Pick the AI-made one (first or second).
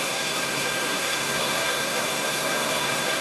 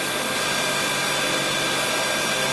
first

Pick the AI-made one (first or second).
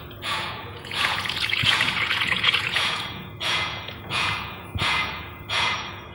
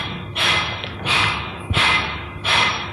first